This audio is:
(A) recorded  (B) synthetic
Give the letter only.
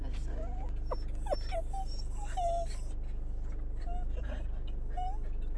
A